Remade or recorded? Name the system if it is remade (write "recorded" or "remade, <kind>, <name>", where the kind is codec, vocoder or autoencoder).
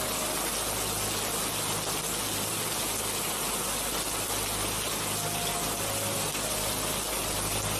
recorded